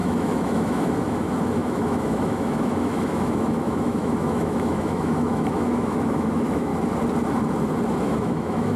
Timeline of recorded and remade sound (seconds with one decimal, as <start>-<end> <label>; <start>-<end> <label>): 0.0-6.7 remade; 6.7-8.0 recorded; 8.0-8.8 remade